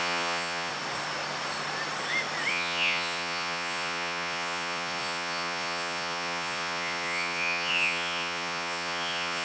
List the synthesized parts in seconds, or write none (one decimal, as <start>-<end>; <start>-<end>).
0.0-0.7; 2.5-9.4

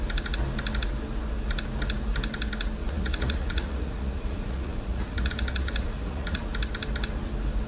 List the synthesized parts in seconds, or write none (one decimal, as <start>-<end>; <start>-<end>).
2.8-6.4

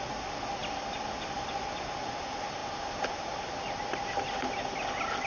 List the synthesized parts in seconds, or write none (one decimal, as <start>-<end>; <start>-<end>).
none

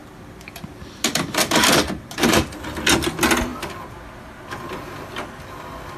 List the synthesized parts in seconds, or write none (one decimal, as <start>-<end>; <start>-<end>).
none

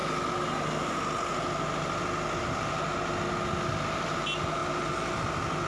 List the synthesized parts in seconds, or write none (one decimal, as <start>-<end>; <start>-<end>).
none

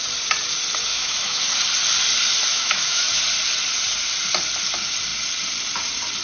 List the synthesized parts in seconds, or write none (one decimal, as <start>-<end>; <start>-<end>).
0.9-1.4; 2.5-3.2

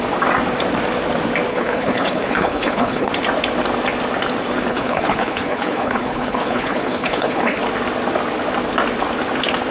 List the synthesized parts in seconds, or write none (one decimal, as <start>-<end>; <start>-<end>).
1.5-3.1; 4.7-7.6

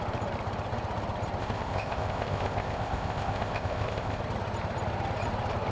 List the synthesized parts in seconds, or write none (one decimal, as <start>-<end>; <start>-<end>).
1.4-4.2